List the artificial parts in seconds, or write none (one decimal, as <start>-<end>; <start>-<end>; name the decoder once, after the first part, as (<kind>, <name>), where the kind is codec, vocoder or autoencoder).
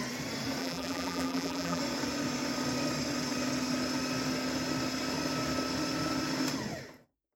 0.6-1.8 (vocoder, BigVGAN v2)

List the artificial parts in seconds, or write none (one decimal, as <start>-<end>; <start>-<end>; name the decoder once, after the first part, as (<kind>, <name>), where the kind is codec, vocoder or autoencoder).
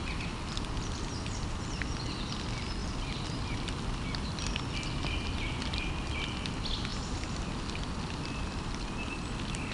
none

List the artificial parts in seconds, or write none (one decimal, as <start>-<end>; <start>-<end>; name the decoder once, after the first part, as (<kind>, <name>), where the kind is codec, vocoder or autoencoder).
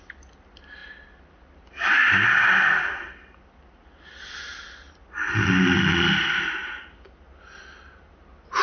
none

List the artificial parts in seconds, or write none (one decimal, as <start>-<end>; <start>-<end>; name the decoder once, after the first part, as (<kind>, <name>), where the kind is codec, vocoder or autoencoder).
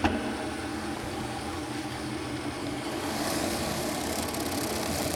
0.7-2.1 (codec, DAC); 2.6-4.2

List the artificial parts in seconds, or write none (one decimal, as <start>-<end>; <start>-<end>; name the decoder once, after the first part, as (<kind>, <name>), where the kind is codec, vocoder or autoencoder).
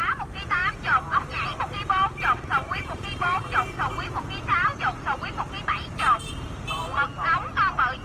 0.0-3.6 (vocoder, BigVGAN v2); 4.7-6.8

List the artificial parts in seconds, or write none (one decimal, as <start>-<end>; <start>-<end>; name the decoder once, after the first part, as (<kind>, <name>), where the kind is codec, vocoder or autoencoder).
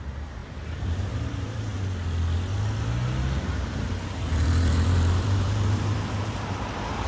0.0-1.7 (vocoder, BigVGAN v2); 3.4-7.1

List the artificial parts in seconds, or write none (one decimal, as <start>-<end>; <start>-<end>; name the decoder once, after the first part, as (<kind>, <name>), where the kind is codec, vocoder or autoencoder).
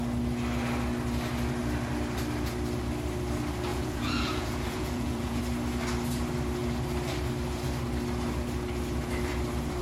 3.7-5.4 (vocoder, Vocos)